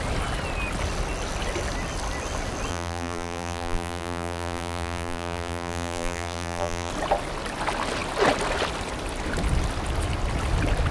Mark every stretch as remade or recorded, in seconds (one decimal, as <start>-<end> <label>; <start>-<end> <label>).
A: 0.0-2.7 recorded; 2.7-6.9 remade; 6.9-10.9 recorded